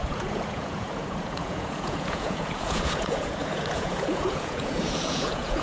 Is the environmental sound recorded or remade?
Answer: remade